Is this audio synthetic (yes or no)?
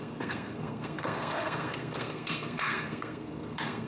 yes